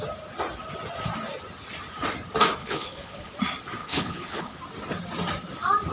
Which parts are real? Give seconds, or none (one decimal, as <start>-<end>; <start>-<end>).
0.0-2.6; 3.3-3.8; 4.6-5.9